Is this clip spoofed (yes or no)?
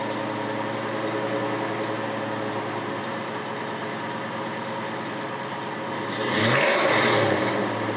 no